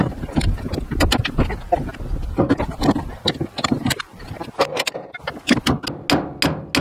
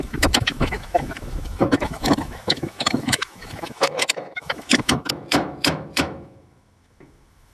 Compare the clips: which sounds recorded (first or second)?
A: first